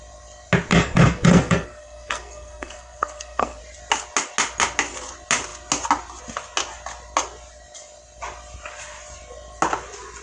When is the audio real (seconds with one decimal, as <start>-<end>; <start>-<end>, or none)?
0.0-0.7; 3.6-10.2

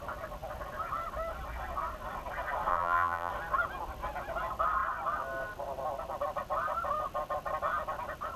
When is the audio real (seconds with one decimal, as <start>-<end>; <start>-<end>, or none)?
0.0-2.7; 3.3-8.4

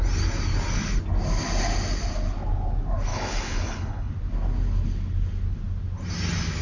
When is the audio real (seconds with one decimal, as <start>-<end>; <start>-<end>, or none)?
0.0-3.1; 4.1-6.6

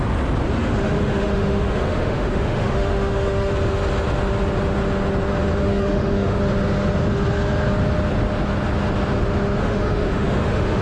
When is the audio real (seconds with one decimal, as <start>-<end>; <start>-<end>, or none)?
0.0-0.6; 3.5-5.6; 6.4-9.6

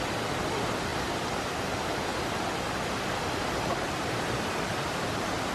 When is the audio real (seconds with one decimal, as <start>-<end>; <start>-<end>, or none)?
0.0-0.9; 1.6-2.1